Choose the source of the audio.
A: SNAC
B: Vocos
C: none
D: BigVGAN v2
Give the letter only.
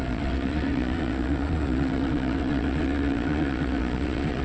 B